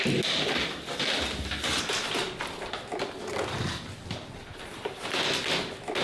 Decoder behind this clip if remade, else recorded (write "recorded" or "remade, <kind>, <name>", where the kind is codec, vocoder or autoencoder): recorded